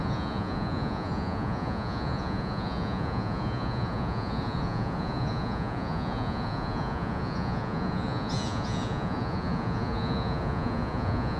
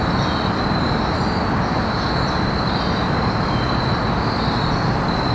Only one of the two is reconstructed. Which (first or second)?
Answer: first